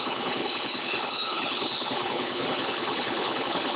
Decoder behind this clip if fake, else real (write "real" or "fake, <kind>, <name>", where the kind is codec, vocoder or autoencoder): fake, codec, HILCodec